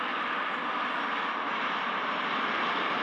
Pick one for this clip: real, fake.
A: real